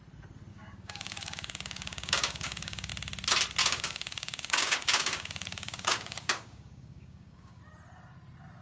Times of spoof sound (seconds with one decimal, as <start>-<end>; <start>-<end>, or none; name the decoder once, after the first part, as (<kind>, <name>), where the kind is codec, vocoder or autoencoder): 0.5-2.9 (codec, DAC); 3.6-7.6